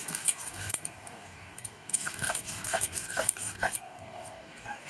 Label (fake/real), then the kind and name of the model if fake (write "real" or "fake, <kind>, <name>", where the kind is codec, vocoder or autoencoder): fake, codec, DAC